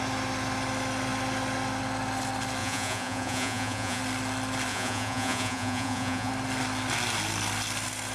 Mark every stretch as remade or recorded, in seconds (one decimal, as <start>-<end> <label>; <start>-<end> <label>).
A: 0.0-2.6 recorded; 2.6-4.0 remade; 4.0-4.7 recorded; 4.7-6.3 remade; 6.3-8.1 recorded